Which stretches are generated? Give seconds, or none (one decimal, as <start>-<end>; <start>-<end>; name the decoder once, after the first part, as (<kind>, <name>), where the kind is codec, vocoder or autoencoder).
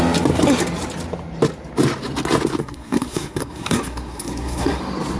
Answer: 2.6-4.8 (codec, SNAC)